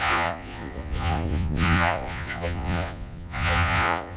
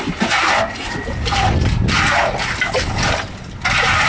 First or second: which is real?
second